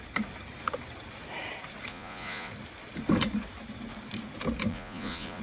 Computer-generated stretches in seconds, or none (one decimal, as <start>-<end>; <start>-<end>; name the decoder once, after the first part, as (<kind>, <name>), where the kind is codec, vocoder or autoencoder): 1.9-2.5 (vocoder, Vocos); 4.7-5.4